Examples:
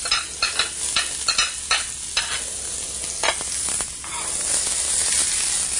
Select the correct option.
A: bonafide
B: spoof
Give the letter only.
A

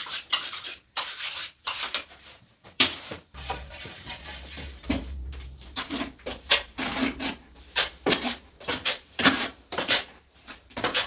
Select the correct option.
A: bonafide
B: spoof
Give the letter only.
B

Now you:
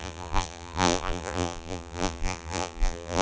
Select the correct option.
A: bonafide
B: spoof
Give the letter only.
B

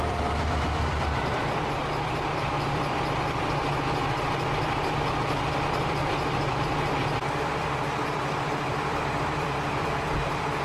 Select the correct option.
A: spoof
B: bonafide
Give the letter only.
A